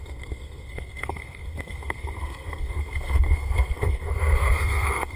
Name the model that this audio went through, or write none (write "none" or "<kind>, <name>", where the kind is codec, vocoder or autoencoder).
codec, SNAC